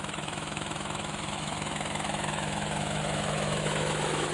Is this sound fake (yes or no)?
yes